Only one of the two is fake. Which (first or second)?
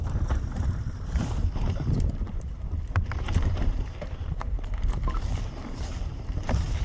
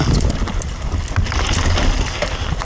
first